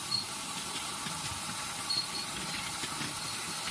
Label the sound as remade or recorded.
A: recorded